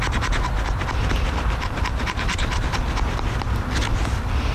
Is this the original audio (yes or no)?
yes